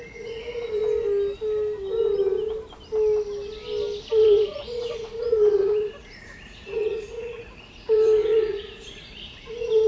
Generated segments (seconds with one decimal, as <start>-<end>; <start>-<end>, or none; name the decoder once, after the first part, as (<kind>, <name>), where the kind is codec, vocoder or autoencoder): 0.0-0.8 (vocoder, Vocos); 4.0-9.9